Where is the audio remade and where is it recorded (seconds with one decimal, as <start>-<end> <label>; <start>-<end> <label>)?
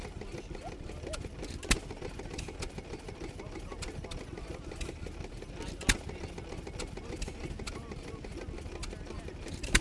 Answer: 0.0-9.8 recorded